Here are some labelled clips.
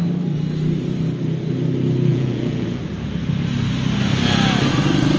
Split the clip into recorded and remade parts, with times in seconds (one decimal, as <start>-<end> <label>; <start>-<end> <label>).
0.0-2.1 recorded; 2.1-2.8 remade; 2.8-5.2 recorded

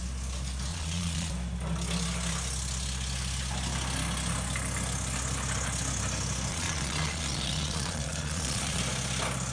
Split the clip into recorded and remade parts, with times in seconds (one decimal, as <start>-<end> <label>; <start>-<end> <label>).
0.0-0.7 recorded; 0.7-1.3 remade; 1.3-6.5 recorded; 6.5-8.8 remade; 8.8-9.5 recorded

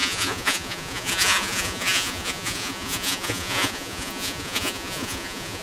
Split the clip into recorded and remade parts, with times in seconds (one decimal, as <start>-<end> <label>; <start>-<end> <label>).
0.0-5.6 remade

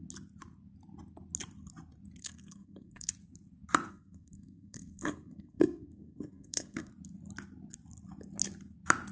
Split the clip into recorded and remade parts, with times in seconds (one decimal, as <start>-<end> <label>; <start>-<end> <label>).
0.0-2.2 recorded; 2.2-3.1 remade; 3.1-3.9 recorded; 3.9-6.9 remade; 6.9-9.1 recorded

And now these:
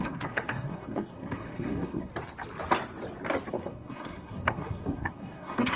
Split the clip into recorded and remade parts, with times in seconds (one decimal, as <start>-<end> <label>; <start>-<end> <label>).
0.0-2.1 remade; 2.1-3.5 recorded; 3.5-5.8 remade